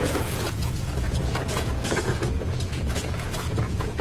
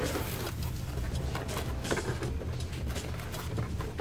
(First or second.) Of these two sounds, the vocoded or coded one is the first